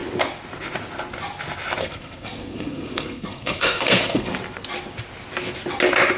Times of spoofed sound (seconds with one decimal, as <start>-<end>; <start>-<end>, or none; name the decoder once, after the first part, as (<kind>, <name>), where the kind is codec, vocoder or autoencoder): 1.8-4.3 (codec, SNAC)